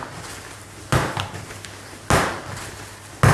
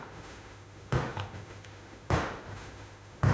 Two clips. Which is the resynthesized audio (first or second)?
second